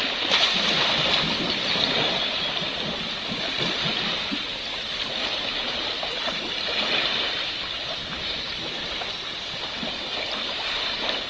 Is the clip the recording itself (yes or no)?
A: yes